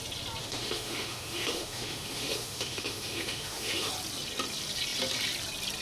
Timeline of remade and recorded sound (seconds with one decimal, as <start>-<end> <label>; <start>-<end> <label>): 0.0-0.4 recorded; 0.4-3.9 remade; 3.9-5.8 recorded